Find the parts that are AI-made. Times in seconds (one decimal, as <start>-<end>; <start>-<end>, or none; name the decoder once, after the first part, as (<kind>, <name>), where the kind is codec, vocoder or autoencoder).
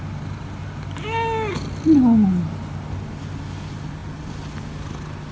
none